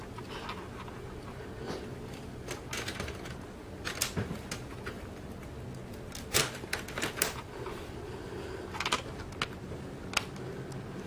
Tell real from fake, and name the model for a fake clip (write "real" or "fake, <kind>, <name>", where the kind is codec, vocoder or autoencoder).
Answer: real